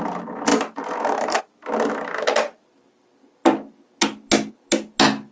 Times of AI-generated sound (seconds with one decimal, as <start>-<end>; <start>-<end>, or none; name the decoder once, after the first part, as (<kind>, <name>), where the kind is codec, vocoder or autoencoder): none

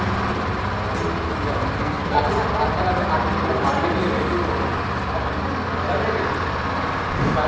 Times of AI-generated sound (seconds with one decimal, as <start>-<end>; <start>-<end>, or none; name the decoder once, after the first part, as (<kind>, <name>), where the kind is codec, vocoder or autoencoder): 1.8-2.3 (codec, SNAC)

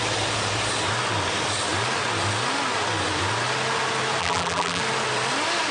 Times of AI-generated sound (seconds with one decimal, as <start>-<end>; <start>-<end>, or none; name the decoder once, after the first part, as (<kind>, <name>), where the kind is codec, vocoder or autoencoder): 4.2-4.8 (vocoder, BigVGAN v2)

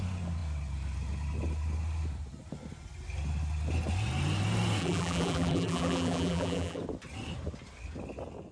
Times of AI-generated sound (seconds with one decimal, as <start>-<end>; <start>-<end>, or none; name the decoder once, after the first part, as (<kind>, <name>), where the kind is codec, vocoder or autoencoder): 4.8-6.8 (vocoder, BigVGAN v2)

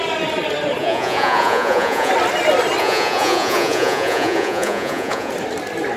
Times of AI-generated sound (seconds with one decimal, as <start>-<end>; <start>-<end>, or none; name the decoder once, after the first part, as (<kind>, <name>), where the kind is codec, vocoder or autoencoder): 0.8-2.1 (vocoder, Vocos); 2.8-5.3

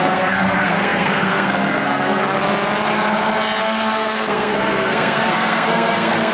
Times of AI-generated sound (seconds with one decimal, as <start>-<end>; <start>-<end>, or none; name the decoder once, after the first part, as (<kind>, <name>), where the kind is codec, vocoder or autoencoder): 0.0-2.4 (codec, SNAC); 3.6-6.3